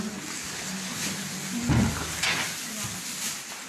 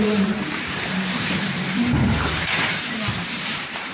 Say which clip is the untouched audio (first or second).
first